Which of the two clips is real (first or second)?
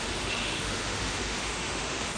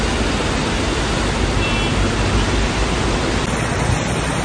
second